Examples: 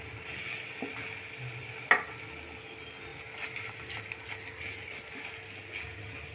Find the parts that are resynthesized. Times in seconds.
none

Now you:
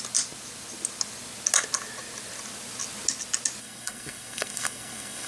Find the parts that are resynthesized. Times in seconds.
3.6-5.3

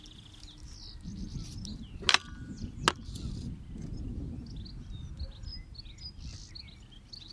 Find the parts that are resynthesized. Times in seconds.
none

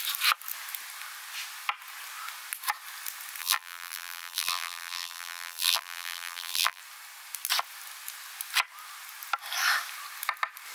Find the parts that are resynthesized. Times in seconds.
3.4-6.8

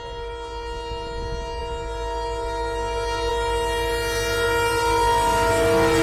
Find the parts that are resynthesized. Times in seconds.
none